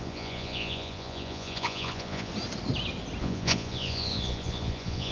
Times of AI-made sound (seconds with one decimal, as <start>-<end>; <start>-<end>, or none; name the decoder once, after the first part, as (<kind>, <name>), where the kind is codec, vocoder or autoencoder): 0.0-2.3 (vocoder, Vocos); 3.2-5.1